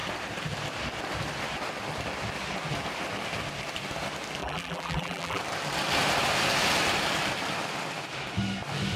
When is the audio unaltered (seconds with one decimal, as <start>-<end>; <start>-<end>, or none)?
0.0-4.4; 5.4-9.0